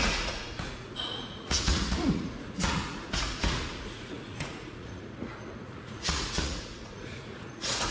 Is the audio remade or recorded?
remade